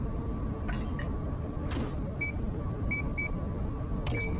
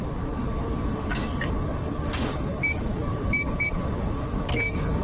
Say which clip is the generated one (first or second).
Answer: second